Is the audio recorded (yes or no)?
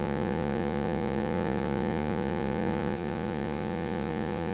no